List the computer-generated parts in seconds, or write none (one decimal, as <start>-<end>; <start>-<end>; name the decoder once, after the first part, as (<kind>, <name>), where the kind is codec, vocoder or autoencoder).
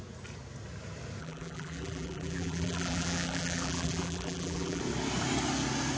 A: 1.2-4.8 (vocoder, BigVGAN v2)